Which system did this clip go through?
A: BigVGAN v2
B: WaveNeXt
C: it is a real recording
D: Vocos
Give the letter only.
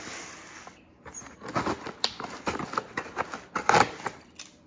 C